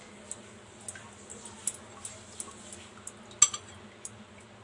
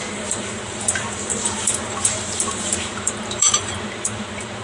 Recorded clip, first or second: first